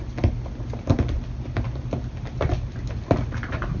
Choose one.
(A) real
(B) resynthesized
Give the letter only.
A